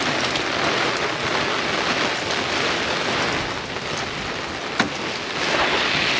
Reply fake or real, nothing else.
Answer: real